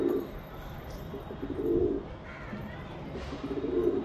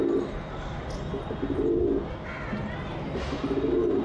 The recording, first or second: second